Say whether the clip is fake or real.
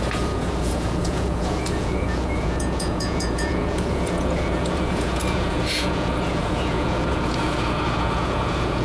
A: fake